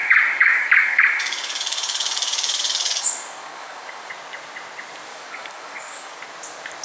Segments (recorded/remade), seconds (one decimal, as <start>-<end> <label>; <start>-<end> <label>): 0.0-4.1 remade; 4.1-5.1 recorded; 5.1-6.2 remade; 6.2-6.8 recorded

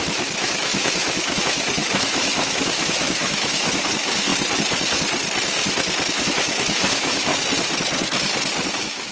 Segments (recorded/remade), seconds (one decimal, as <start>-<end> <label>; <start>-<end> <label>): 0.0-4.3 remade; 4.3-6.1 recorded; 6.1-7.3 remade; 7.3-8.7 recorded; 8.7-9.1 remade

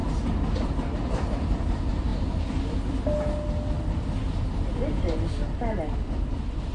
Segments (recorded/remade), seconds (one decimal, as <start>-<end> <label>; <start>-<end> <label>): 0.0-0.9 recorded; 0.9-2.1 remade; 2.1-6.1 recorded; 6.1-6.7 remade

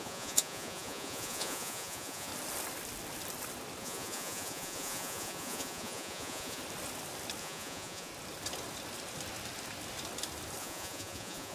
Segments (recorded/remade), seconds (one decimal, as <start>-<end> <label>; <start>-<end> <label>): 0.0-2.3 remade; 2.3-3.8 recorded; 3.8-6.6 remade; 6.6-7.4 recorded; 7.4-8.1 remade; 8.1-10.6 recorded; 10.6-11.5 remade

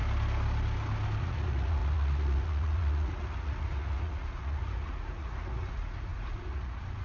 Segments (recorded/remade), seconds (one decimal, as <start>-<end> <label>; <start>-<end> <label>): 0.0-1.2 recorded; 1.2-7.0 remade

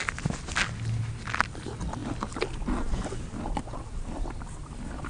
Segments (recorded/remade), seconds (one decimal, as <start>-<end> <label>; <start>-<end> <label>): 0.0-5.1 recorded

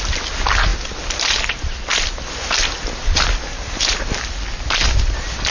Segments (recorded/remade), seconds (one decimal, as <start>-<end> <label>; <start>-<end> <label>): 0.0-5.5 recorded